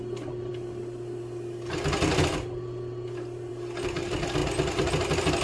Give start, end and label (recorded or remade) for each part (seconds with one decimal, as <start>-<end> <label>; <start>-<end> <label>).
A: 0.0-5.4 recorded

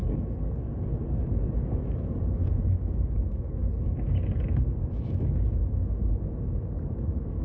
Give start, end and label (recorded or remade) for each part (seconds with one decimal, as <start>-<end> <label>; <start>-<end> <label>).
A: 0.0-2.2 recorded; 2.2-3.6 remade; 3.6-4.8 recorded; 4.8-7.4 remade

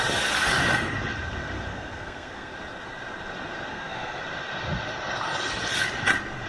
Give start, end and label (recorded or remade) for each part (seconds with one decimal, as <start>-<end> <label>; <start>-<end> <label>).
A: 0.0-1.7 recorded; 1.7-2.5 remade; 2.5-3.7 recorded; 3.7-4.2 remade; 4.2-6.5 recorded

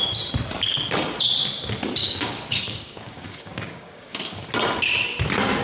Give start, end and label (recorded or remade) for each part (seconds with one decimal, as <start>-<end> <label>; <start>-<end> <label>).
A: 0.0-2.0 recorded; 2.0-4.5 remade; 4.5-5.6 recorded

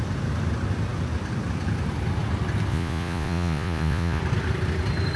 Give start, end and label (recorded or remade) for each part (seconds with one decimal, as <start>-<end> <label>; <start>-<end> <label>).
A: 0.0-2.7 recorded; 2.7-4.2 remade; 4.2-5.2 recorded

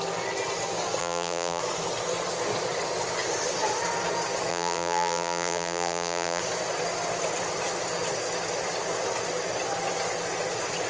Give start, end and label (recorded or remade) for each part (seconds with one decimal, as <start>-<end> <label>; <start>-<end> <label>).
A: 0.0-1.0 recorded; 1.0-1.6 remade; 1.6-4.5 recorded; 4.5-6.4 remade; 6.4-10.9 recorded

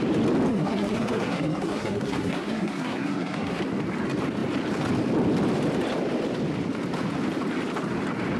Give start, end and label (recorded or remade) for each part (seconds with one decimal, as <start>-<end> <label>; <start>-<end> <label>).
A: 0.0-0.5 recorded; 0.5-3.6 remade; 3.6-8.4 recorded